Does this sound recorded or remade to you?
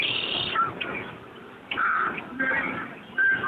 recorded